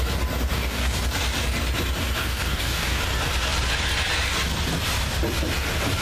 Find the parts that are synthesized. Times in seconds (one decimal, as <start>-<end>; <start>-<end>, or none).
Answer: 0.5-1.0; 2.2-3.0